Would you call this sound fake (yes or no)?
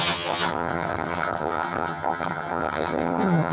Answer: yes